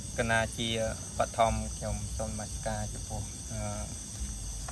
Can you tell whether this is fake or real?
real